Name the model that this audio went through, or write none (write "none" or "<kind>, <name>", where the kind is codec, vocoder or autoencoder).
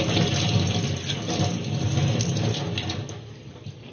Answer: none